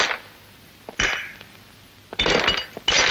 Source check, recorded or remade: recorded